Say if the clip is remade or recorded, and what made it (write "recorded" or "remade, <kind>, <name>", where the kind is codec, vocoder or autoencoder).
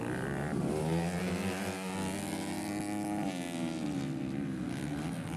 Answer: recorded